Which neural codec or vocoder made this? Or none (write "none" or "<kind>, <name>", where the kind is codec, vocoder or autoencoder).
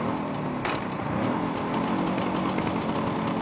none